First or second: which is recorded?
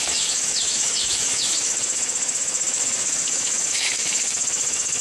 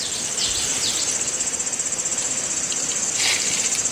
second